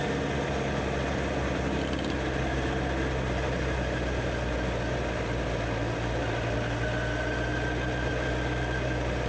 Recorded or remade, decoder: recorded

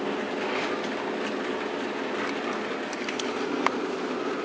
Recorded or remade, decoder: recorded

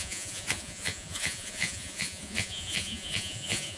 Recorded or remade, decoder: remade, vocoder, Vocos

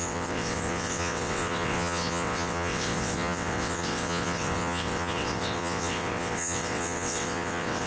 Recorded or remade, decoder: remade, vocoder, WaveNeXt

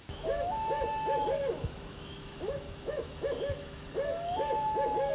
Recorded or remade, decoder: remade, autoencoder, DAC-VAE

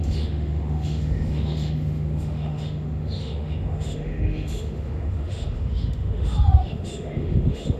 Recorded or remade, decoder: remade, autoencoder, DAC-VAE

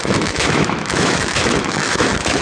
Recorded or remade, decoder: remade, autoencoder, DAC-VAE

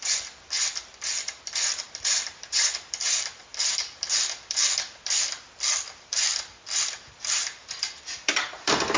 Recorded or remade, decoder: remade, vocoder, BigVGAN v2